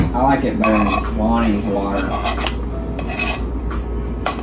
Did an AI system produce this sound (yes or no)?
no